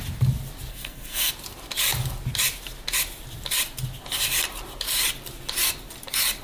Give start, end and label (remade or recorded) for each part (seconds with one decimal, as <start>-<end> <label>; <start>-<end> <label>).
0.0-0.7 recorded; 0.7-1.3 remade; 1.3-6.4 recorded